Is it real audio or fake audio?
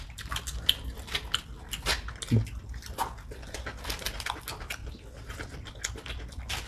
real